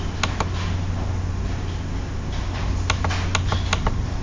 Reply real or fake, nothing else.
real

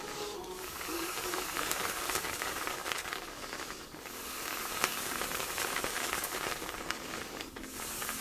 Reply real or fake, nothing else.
fake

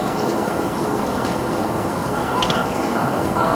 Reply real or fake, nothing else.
fake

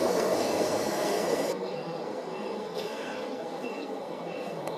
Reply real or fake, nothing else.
fake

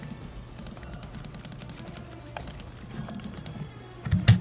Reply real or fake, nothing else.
real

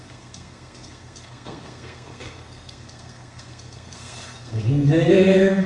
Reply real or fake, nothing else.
fake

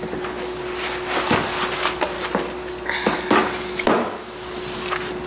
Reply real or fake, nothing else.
real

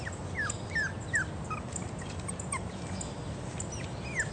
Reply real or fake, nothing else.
real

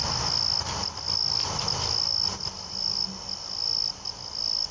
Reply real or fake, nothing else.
real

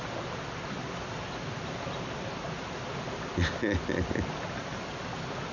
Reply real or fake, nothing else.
real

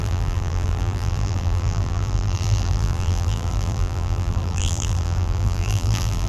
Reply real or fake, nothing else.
fake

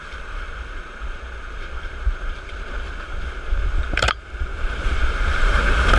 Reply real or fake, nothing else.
fake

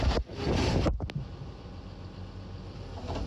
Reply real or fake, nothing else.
real